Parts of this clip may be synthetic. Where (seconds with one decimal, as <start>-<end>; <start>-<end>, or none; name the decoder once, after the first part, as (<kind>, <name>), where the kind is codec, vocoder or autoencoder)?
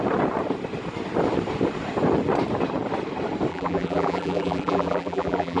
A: 3.5-5.6 (vocoder, BigVGAN v2)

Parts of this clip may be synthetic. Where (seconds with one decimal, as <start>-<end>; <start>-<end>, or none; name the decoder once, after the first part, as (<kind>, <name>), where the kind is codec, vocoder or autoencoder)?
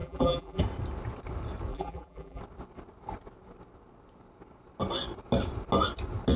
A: 0.0-0.6 (vocoder, BigVGAN v2); 1.7-2.4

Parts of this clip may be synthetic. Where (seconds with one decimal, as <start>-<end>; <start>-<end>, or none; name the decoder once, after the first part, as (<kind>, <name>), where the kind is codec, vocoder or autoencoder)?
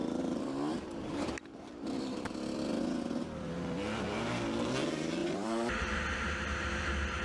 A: 0.0-2.0 (vocoder, BigVGAN v2); 5.2-6.0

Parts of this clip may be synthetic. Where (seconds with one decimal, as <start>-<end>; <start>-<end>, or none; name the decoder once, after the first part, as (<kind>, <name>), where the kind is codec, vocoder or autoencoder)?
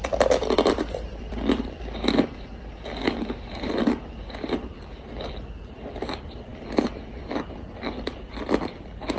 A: 0.0-9.2 (vocoder, BigVGAN v2)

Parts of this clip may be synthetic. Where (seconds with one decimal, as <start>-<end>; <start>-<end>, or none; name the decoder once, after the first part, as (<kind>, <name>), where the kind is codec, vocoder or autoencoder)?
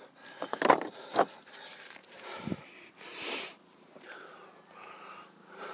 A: 2.0-2.6 (vocoder, BigVGAN v2); 3.1-3.9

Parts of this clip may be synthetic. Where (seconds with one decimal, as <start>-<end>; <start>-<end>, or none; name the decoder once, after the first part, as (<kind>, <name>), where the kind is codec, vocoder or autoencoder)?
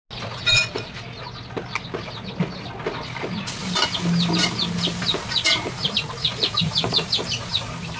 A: 3.6-8.0 (vocoder, BigVGAN v2)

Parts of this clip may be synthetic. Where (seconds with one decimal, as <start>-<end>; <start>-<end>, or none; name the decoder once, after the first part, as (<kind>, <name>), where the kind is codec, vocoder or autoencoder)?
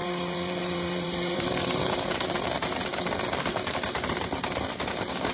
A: 0.0-3.0 (vocoder, BigVGAN v2); 3.5-4.2